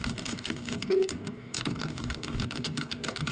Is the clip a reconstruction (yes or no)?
yes